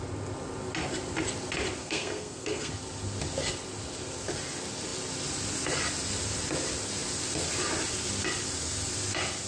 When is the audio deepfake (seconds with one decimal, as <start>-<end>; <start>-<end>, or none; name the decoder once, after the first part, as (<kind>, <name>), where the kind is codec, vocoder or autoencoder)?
1.8-2.7 (codec, SNAC)